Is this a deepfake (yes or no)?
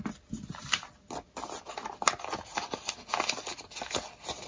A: no